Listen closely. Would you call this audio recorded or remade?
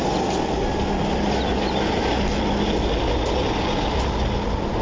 recorded